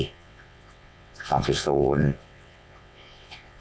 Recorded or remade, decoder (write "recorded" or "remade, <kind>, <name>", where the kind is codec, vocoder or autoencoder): remade, vocoder, WaveNeXt